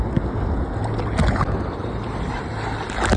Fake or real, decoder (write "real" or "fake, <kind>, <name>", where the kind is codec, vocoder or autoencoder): real